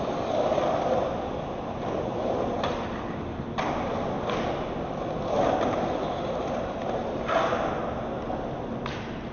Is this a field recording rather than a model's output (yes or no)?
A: yes